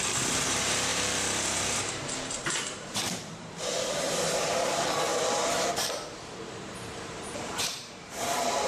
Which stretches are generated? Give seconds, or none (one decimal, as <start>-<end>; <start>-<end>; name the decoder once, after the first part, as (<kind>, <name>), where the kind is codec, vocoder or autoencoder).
0.0-8.7 (vocoder, BigVGAN v2)